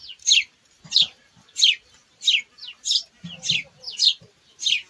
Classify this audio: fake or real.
real